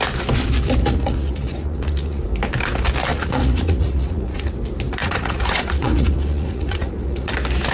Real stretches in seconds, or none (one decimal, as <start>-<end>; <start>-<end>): 0.0-0.8; 2.2-3.1; 4.5-5.0; 7.3-7.7